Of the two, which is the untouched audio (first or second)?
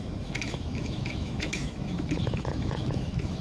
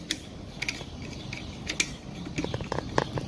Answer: second